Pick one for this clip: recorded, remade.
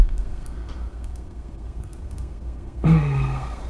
remade